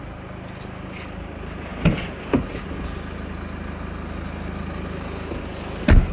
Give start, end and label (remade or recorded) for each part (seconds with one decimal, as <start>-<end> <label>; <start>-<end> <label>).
0.0-6.1 recorded